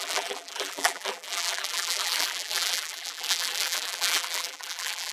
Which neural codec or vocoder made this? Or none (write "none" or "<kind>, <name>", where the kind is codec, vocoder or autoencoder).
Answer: vocoder, BigVGAN v2